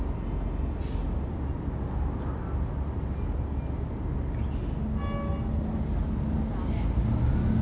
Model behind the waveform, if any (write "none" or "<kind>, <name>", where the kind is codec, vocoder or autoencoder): none